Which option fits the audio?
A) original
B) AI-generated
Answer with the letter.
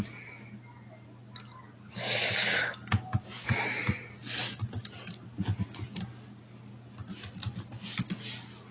A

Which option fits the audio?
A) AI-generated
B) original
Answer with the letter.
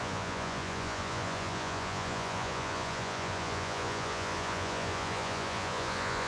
A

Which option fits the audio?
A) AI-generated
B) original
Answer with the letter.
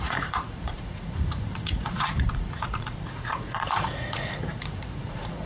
A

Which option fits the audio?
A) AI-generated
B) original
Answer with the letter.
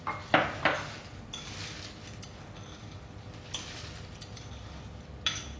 B